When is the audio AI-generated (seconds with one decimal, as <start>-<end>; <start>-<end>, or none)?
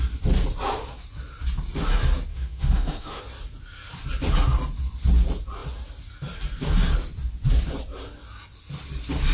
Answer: 2.3-3.2